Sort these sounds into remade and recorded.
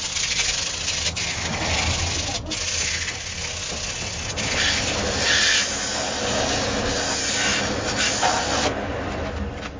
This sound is recorded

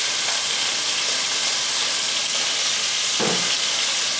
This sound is recorded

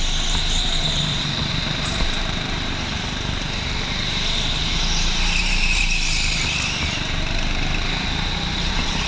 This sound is remade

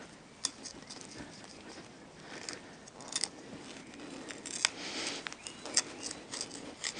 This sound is recorded